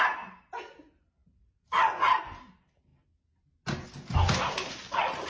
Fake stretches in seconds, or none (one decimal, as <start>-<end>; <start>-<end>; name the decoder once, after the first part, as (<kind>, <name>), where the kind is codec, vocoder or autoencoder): 1.2-2.2 (vocoder, BigVGAN v2)